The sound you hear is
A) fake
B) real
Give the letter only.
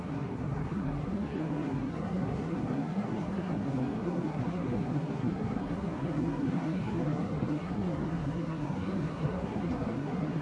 A